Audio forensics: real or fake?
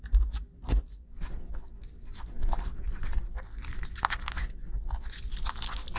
real